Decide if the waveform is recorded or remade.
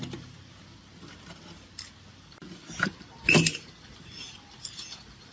recorded